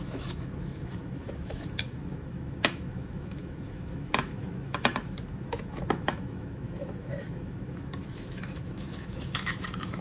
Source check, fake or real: fake